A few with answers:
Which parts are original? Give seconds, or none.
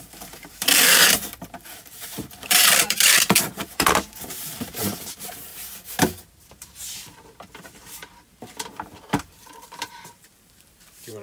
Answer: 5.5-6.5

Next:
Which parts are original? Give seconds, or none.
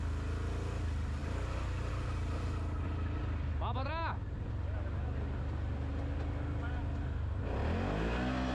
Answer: 0.0-8.5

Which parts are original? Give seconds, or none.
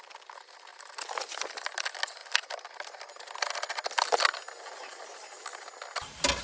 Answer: 0.0-0.7; 1.5-6.4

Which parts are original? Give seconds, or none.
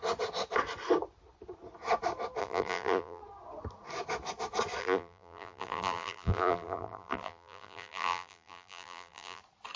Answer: 0.0-2.4; 3.2-4.8; 9.4-9.8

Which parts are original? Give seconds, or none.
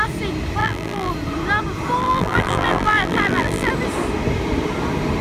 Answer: 0.0-0.6; 1.1-2.0; 3.7-5.2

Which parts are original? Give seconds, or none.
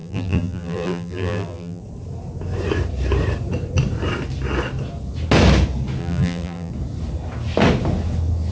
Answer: 1.8-6.0; 6.7-8.5